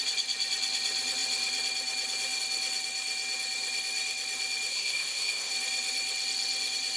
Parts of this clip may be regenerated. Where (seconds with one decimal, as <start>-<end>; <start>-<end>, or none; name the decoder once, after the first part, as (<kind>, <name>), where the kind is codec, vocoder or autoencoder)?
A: 4.7-5.5 (codec, SNAC)